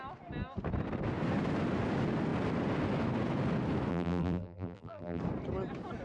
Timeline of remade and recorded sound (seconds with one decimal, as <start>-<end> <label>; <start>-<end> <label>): 0.0-3.9 recorded; 3.9-5.2 remade; 5.2-6.0 recorded